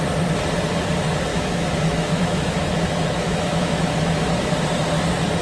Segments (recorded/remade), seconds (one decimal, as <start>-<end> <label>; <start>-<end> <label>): 0.0-1.3 recorded; 1.3-4.5 remade; 4.5-5.4 recorded